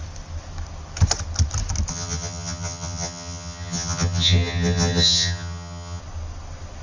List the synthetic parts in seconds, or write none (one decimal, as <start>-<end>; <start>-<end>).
1.9-6.0